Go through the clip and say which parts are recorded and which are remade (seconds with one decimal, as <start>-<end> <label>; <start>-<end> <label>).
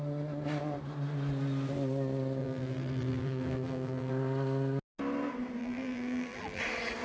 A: 0.0-2.4 recorded; 2.4-4.1 remade; 4.1-5.6 recorded; 5.6-6.6 remade; 6.6-7.0 recorded